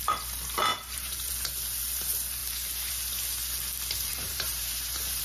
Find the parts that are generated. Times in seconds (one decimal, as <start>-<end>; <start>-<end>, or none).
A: 0.7-1.3; 2.4-2.9; 4.1-5.2